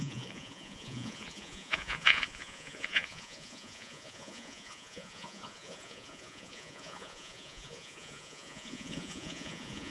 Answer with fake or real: fake